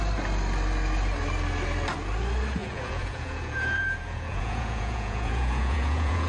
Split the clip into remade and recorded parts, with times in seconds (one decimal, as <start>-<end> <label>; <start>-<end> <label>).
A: 0.0-2.6 recorded; 2.6-6.3 remade